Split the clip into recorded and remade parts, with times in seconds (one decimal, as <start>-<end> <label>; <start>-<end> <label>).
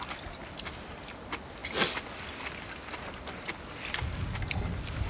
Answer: 0.0-5.1 recorded